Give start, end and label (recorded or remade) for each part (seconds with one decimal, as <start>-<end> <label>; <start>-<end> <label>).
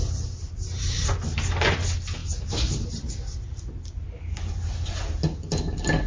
0.0-6.1 recorded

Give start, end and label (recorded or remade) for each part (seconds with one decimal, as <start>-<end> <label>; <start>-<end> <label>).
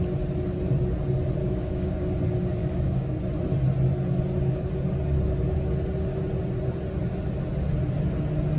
0.0-1.4 recorded; 1.4-2.1 remade; 2.1-2.6 recorded; 2.6-3.2 remade; 3.2-8.6 recorded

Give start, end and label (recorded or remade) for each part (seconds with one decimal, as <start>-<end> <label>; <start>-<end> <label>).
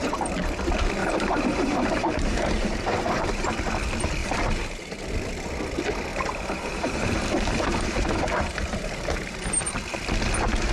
0.0-1.0 recorded; 1.0-3.6 remade; 3.6-4.2 recorded; 4.2-5.1 remade; 5.1-6.1 recorded; 6.1-10.0 remade; 10.0-10.7 recorded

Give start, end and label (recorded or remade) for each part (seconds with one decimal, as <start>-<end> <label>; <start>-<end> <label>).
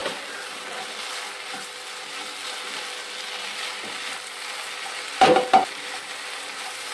0.0-6.9 remade